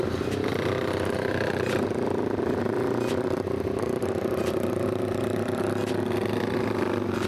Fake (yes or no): no